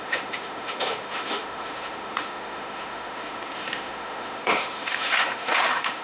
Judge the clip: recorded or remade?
remade